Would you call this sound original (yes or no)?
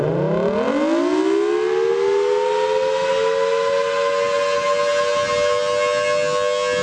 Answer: yes